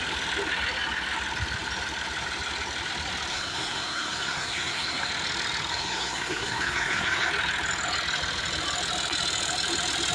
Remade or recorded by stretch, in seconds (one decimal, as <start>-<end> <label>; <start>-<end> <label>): 0.0-3.3 recorded; 3.3-5.1 remade; 5.1-5.7 recorded; 5.7-7.3 remade; 7.3-10.1 recorded